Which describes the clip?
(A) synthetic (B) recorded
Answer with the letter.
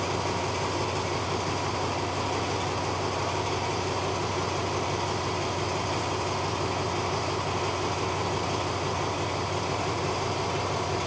B